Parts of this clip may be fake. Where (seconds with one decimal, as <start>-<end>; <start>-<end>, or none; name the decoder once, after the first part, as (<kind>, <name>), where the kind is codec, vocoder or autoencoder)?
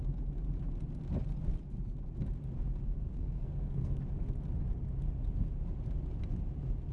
3.1-4.0 (codec, SNAC)